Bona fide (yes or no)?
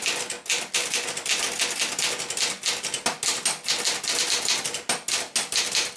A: yes